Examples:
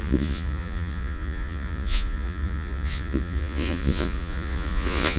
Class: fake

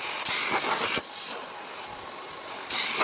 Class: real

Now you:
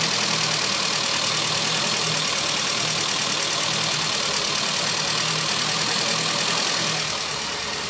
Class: real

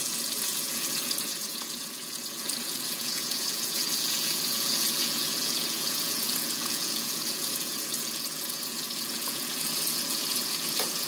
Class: fake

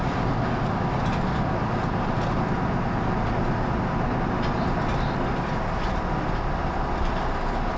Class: real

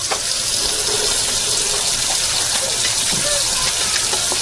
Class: real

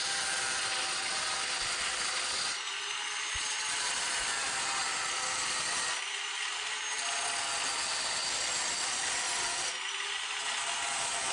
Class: real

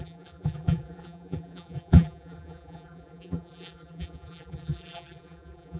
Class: fake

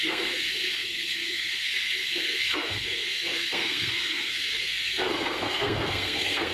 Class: fake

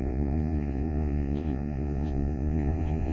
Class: fake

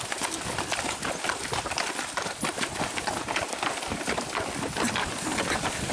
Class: real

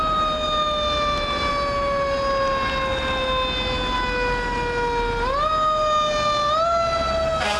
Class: real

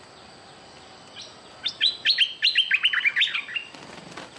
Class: real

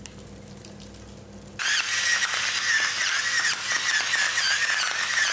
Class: real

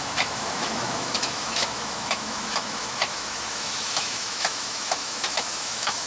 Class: fake